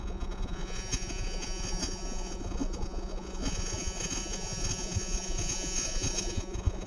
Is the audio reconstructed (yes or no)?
yes